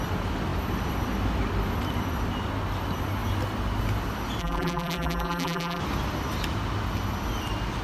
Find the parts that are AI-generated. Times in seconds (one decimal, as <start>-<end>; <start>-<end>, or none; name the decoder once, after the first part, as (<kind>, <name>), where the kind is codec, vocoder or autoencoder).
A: 4.4-5.8 (vocoder, BigVGAN v2)